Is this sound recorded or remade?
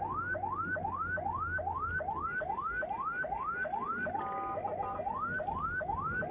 recorded